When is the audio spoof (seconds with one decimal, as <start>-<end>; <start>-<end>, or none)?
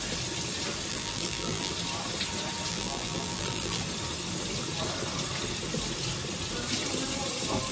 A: 0.9-1.7; 2.7-3.8